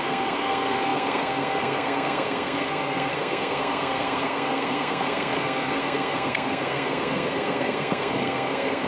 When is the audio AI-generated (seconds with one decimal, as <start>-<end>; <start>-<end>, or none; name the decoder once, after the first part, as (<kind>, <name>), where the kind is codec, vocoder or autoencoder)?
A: 0.0-8.9 (codec, SNAC)